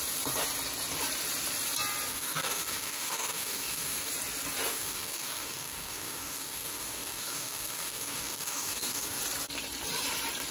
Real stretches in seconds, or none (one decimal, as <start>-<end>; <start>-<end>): 0.0-2.1; 4.1-4.7; 9.2-10.5

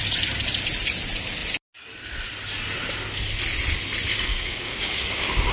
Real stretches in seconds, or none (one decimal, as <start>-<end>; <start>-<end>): 0.0-4.3

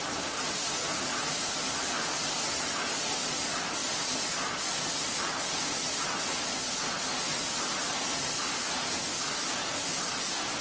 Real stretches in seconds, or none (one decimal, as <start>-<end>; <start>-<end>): 0.0-10.6

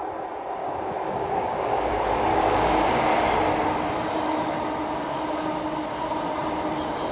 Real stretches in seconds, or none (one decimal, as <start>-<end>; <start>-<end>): 0.0-0.6; 1.9-2.3; 3.1-7.1

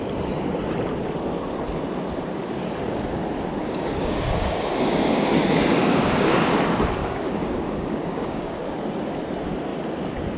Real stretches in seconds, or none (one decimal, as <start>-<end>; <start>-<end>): 0.0-3.6; 6.6-7.0; 8.6-10.4